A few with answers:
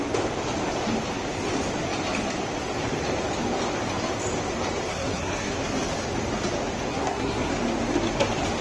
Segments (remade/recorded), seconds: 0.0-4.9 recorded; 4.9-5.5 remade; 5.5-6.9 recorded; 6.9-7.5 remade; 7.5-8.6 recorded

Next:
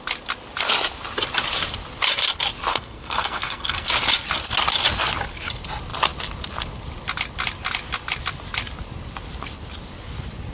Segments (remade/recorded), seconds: 0.0-2.7 recorded; 2.7-3.9 remade; 3.9-10.5 recorded

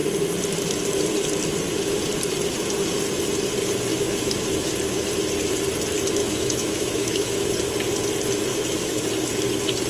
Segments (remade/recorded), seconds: 0.0-3.9 recorded; 3.9-4.7 remade; 4.7-6.2 recorded; 6.2-7.5 remade; 7.5-8.5 recorded; 8.5-9.1 remade; 9.1-9.9 recorded

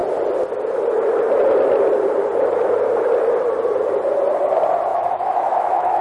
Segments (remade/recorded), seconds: 0.0-4.9 recorded; 4.9-6.0 remade

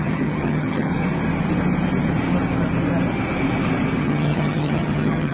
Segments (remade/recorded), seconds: 0.0-0.9 remade; 0.9-4.0 recorded; 4.0-5.3 remade